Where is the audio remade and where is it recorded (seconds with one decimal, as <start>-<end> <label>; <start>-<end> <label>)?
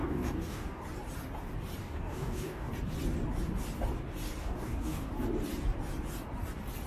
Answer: 0.0-0.8 remade; 0.8-1.8 recorded; 1.8-2.7 remade; 2.7-4.4 recorded; 4.4-5.1 remade; 5.1-6.9 recorded